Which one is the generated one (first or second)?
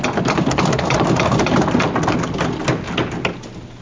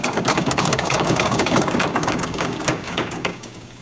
second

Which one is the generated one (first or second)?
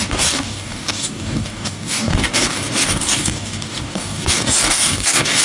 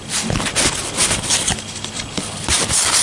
first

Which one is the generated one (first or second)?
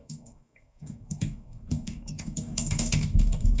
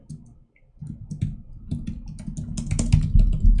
first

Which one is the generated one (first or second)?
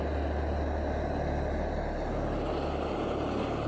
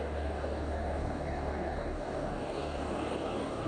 second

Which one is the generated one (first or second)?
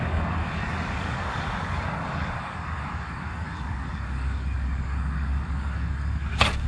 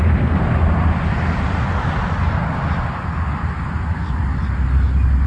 first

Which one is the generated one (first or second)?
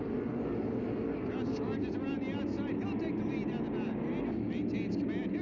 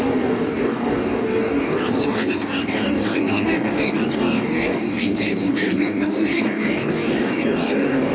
second